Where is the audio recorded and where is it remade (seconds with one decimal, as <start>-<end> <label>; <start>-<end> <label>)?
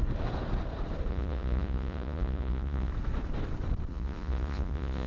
0.0-1.1 recorded; 1.1-2.9 remade; 2.9-3.9 recorded; 3.9-5.1 remade